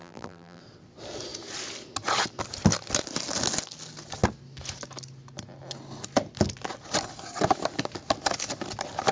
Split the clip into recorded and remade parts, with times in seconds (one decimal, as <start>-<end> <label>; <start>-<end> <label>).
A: 0.0-0.6 remade; 0.6-9.1 recorded